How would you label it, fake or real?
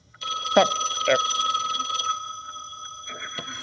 fake